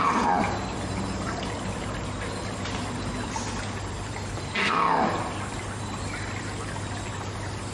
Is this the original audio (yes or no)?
yes